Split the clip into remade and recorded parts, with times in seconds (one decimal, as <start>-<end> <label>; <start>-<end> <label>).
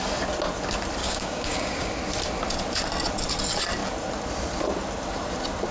0.0-1.0 recorded; 1.0-1.9 remade; 1.9-5.7 recorded